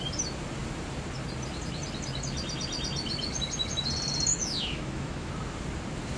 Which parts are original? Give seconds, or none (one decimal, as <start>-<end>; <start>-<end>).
0.0-4.3; 5.3-6.2